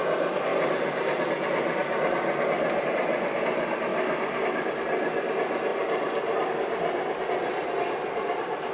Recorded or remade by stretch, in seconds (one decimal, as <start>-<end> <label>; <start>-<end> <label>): 0.0-8.7 recorded